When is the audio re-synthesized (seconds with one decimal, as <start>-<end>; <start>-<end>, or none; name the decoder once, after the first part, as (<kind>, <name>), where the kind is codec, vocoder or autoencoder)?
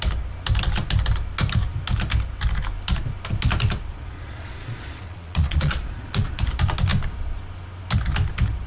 3.9-6.4 (vocoder, Vocos)